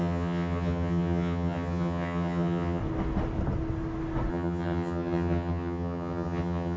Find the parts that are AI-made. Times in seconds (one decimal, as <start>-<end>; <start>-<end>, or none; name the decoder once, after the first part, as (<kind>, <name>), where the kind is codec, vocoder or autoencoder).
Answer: 0.0-2.8 (vocoder, HiFi-GAN); 4.3-6.8